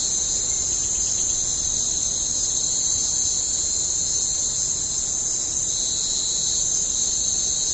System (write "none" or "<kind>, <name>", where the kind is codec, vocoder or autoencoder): none